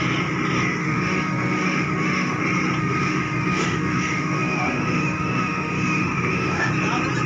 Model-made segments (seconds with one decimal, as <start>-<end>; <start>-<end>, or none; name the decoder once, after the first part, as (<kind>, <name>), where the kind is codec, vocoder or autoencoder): 0.8-2.4 (autoencoder, DAC-VAE); 2.8-6.7